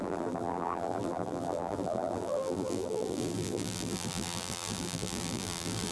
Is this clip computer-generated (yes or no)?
yes